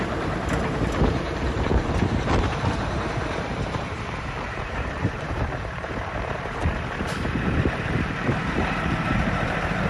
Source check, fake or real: fake